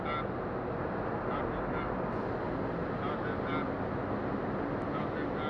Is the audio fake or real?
real